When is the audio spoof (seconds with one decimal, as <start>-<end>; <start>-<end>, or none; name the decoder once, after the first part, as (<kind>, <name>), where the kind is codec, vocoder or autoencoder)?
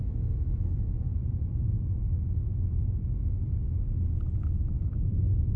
0.0-1.2 (autoencoder, DAC-VAE); 1.8-3.4; 4.3-5.6